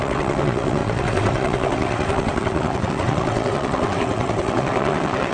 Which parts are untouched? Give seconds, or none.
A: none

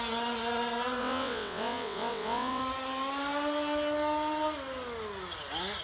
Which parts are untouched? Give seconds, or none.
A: 0.0-1.0; 2.6-5.8

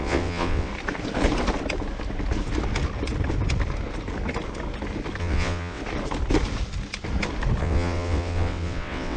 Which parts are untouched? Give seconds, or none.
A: 0.7-5.2; 5.8-7.6

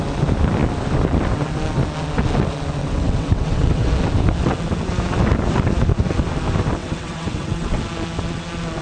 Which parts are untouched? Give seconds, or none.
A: 0.0-2.8; 3.9-6.8; 7.8-8.8

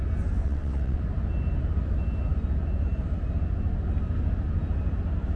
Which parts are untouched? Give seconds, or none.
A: 0.0-0.4; 1.0-5.4

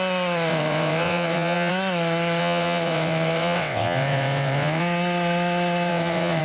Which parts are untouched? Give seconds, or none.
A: 0.0-0.5; 1.7-2.4; 4.8-5.9